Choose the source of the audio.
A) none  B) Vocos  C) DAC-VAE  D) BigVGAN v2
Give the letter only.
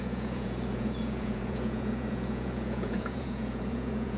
B